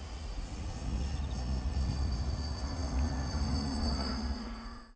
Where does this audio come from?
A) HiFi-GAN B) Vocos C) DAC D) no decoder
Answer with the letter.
B